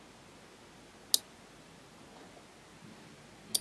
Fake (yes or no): no